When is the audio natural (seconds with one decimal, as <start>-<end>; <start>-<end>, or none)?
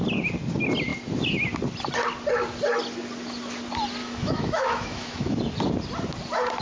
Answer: 0.0-4.0; 5.4-6.6